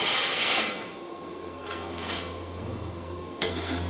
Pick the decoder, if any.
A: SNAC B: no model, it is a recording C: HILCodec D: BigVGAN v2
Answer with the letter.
A